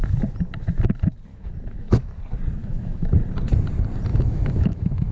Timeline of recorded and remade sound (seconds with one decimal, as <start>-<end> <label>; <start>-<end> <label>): 0.0-1.3 recorded; 1.3-2.2 remade; 2.2-2.6 recorded; 2.6-3.1 remade; 3.1-4.1 recorded; 4.1-5.1 remade